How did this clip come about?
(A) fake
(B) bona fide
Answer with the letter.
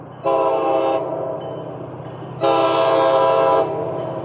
B